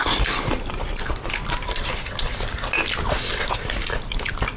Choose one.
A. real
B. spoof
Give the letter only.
A